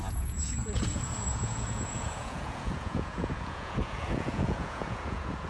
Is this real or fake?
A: fake